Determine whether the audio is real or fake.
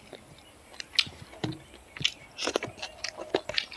real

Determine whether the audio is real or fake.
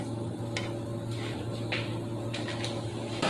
real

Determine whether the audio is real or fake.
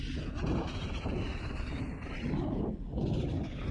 real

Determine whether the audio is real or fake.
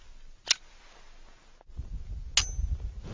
real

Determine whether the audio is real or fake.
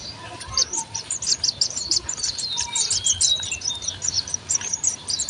fake